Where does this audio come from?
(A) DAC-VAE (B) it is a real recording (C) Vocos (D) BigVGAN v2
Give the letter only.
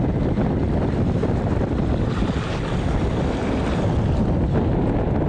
B